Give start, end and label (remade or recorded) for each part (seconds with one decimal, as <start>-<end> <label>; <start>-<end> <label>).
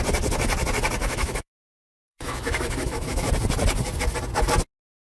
0.0-1.0 recorded; 1.0-3.3 remade; 3.3-5.1 recorded